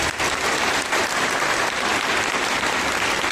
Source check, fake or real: fake